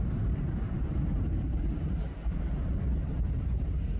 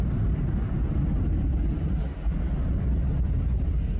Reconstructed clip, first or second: first